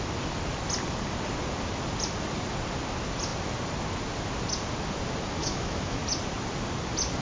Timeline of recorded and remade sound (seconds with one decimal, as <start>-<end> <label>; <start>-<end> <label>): 0.0-5.4 recorded; 5.4-6.0 remade; 6.0-7.2 recorded